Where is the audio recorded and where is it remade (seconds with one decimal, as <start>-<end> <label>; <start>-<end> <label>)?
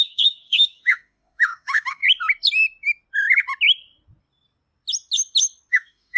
0.0-2.0 remade; 2.0-5.7 recorded; 5.7-6.2 remade